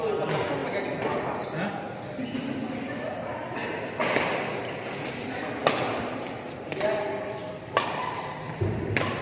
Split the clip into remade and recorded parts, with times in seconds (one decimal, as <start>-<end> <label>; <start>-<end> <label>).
0.0-9.2 recorded